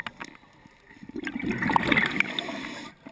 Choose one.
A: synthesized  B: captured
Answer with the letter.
B